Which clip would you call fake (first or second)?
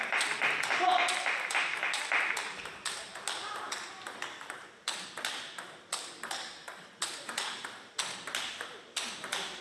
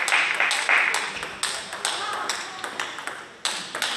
first